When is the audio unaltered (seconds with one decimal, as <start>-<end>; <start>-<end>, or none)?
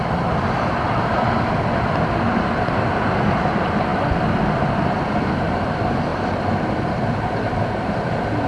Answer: 0.0-8.5